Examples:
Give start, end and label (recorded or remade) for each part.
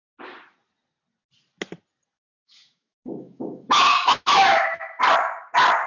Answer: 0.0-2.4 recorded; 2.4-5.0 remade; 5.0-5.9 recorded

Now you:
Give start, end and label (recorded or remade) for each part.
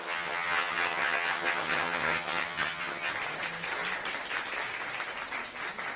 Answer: 0.0-3.1 remade; 3.1-6.0 recorded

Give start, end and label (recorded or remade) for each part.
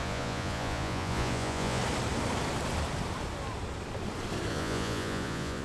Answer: 0.0-1.8 remade; 1.8-4.5 recorded; 4.5-5.6 remade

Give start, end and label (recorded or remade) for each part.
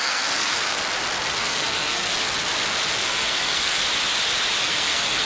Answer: 0.0-0.8 remade; 0.8-1.3 recorded; 1.3-2.1 remade; 2.1-3.0 recorded; 3.0-3.8 remade; 3.8-4.6 recorded; 4.6-5.2 remade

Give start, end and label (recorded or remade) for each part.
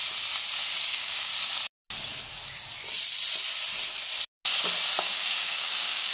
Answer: 0.0-0.9 recorded; 0.9-1.3 remade; 1.3-5.0 recorded; 5.0-6.1 remade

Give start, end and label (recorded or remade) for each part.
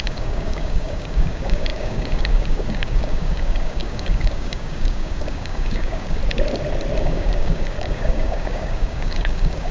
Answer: 0.0-6.2 remade; 6.2-7.0 recorded; 7.0-9.7 remade